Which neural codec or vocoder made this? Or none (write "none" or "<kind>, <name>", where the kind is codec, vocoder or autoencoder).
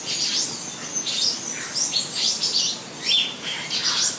none